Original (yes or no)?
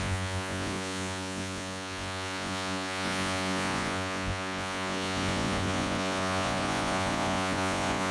no